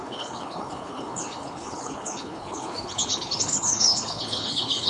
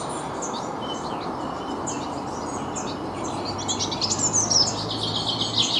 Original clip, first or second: second